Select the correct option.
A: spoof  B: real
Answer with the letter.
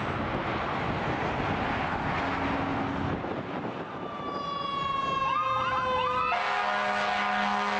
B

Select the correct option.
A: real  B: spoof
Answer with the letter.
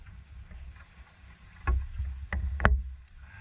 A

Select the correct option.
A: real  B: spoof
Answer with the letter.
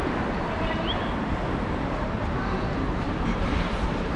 B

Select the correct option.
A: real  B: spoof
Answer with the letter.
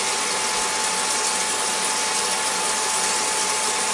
A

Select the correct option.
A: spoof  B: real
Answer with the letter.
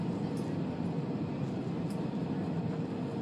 B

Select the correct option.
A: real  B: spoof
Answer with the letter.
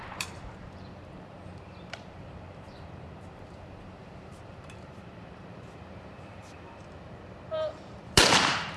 B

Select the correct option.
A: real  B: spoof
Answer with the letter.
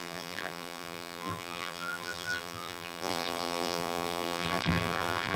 B